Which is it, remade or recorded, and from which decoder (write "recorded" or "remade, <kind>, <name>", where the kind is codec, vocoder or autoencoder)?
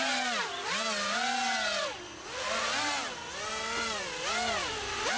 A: recorded